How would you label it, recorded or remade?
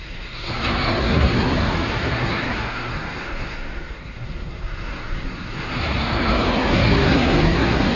remade